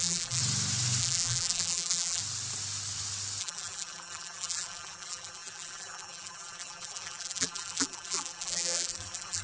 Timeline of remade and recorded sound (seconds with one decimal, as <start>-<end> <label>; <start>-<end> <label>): 0.0-0.4 remade; 0.4-1.0 recorded; 1.0-2.2 remade; 2.2-3.4 recorded; 3.4-9.4 remade